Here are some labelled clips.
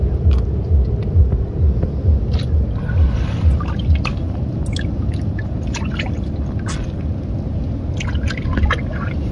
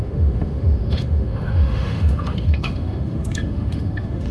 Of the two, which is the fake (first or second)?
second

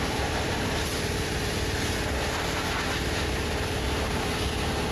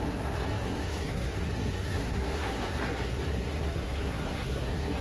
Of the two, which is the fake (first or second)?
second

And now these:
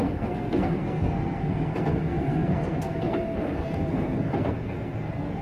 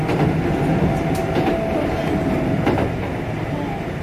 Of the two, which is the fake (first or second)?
first